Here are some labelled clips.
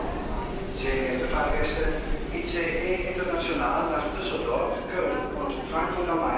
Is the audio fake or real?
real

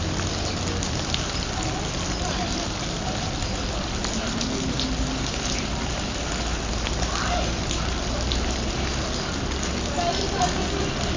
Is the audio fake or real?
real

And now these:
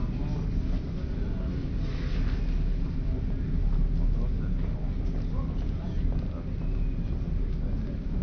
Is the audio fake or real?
real